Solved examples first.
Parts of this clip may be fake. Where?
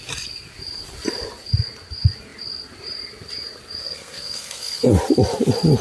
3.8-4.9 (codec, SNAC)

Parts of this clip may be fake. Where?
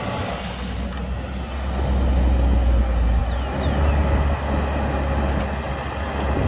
none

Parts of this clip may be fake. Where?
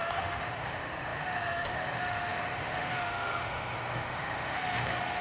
0.0-5.2 (autoencoder, DAC-VAE)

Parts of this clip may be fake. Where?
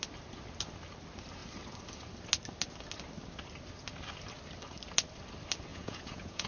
5.7-6.5 (vocoder, Vocos)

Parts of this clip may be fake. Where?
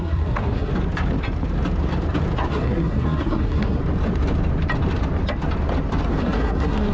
0.0-0.7 (codec, SNAC); 2.5-3.8; 6.2-6.9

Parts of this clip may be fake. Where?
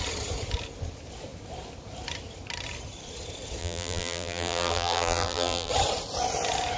3.6-5.7 (vocoder, BigVGAN v2)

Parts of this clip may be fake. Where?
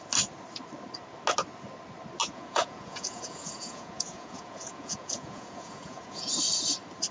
2.2-6.3 (vocoder, Vocos)